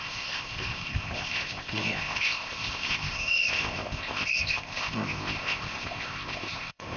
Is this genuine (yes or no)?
no